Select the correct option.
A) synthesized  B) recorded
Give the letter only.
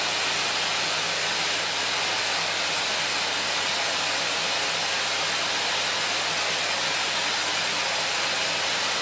B